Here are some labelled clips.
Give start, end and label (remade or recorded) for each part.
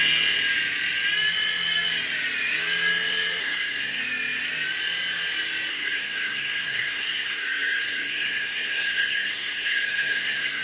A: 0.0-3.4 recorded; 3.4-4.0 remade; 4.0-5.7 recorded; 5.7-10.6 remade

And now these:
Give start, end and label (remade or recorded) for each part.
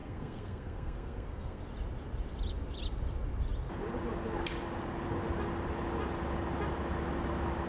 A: 0.0-1.6 remade; 1.6-7.7 recorded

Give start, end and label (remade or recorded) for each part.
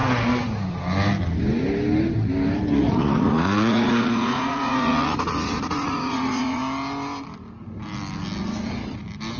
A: 0.0-2.7 recorded; 2.7-6.6 remade; 6.6-9.4 recorded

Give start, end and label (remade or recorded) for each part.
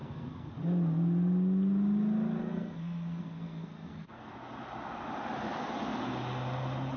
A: 0.0-0.5 remade; 0.5-2.4 recorded; 2.4-4.3 remade; 4.3-7.0 recorded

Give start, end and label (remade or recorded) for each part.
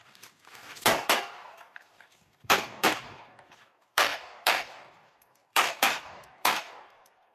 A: 0.0-7.3 remade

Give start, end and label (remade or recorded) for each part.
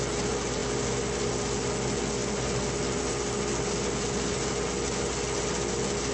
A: 0.0-6.1 recorded